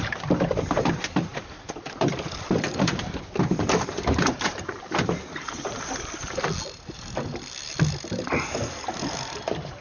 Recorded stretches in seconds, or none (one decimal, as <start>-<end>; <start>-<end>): 0.0-1.3; 6.4-9.8